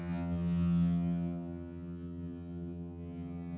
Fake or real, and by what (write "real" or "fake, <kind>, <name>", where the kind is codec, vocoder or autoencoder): fake, vocoder, HiFi-GAN